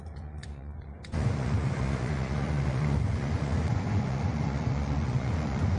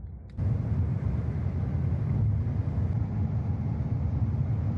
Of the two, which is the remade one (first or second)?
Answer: first